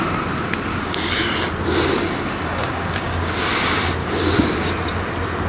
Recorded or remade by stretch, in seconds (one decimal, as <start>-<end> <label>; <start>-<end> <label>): 0.0-0.7 recorded; 0.7-1.3 remade; 1.3-2.6 recorded; 2.6-3.5 remade; 3.5-4.0 recorded; 4.0-4.7 remade; 4.7-5.5 recorded

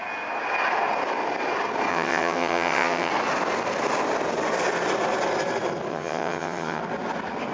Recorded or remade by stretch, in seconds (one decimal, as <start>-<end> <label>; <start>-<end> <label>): 0.0-1.9 recorded; 1.9-3.1 remade; 3.1-5.9 recorded; 5.9-6.8 remade; 6.8-7.5 recorded

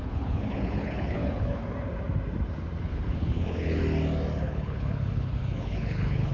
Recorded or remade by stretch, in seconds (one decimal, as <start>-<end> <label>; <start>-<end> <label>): 0.0-1.6 remade; 1.6-2.8 recorded; 2.8-3.8 remade; 3.8-4.4 recorded; 4.4-6.3 remade

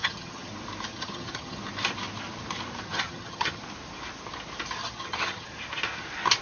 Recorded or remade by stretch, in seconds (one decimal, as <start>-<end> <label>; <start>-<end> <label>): 0.0-0.5 remade; 0.5-0.9 recorded; 0.9-1.6 remade; 1.6-2.8 recorded; 2.8-3.6 remade; 3.6-4.8 recorded; 4.8-5.5 remade; 5.5-6.4 recorded